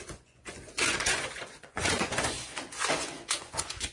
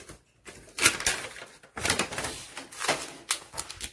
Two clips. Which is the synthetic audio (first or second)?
first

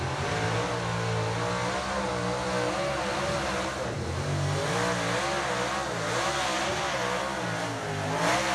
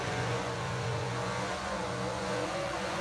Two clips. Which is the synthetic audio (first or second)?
second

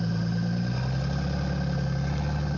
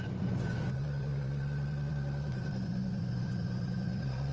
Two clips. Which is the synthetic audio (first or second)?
second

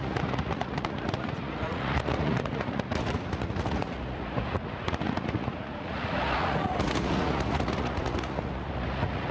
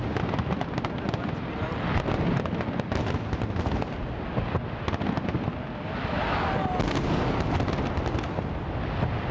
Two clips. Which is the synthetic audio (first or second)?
first